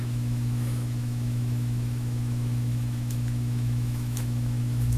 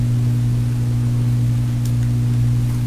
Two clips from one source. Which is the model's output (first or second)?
first